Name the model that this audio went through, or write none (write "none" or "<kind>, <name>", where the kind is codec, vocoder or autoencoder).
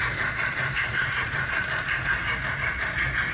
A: vocoder, BigVGAN v2